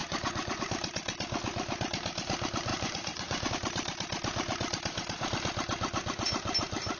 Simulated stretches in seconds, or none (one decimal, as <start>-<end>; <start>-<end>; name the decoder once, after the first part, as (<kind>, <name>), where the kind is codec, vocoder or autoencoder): 0.0-0.6 (vocoder, Vocos); 2.7-3.5